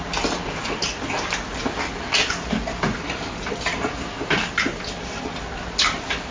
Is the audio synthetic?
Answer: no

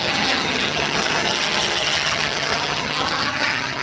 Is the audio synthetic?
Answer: yes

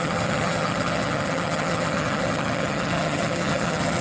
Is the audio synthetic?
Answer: yes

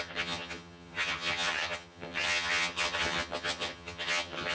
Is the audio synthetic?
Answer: yes